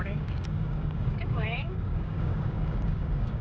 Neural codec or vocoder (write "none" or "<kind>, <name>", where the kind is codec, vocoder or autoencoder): codec, DAC